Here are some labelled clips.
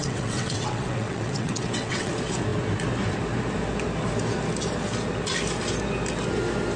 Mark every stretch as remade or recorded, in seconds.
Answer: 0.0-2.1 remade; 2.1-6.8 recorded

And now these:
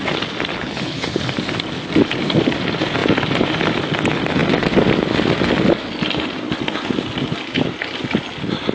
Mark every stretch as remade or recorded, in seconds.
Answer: 0.0-0.5 recorded; 0.5-1.3 remade; 1.3-8.7 recorded

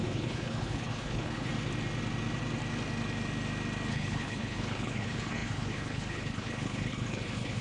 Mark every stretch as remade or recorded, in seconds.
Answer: 0.0-1.5 remade; 1.5-3.9 recorded; 3.9-7.6 remade